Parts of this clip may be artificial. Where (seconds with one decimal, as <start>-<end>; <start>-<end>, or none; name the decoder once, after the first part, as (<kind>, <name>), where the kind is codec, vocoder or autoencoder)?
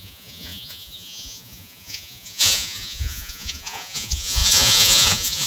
0.0-5.5 (vocoder, Vocos)